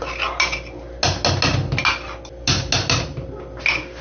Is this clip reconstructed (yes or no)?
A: no